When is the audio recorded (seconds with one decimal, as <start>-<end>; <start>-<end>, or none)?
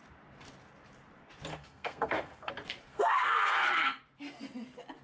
0.0-1.5; 2.5-2.9; 4.0-5.0